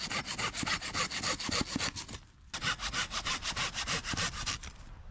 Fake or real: real